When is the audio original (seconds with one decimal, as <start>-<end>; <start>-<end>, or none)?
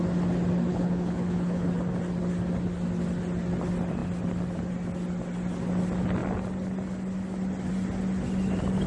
0.0-0.7; 1.7-8.9